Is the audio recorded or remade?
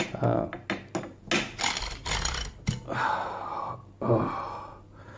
recorded